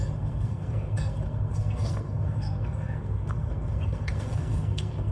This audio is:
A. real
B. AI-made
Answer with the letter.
B